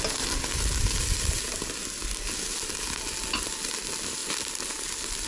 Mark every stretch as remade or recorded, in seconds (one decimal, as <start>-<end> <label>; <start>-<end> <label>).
0.0-5.3 recorded